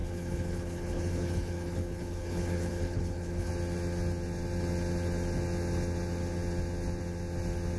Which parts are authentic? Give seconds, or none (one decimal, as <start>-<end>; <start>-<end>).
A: 3.5-7.8